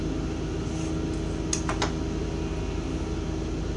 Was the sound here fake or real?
real